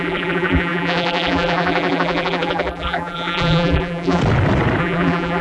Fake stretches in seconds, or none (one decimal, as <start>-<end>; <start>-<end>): 0.0-4.2; 4.8-5.4